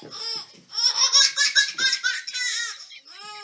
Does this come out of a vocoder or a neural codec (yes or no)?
no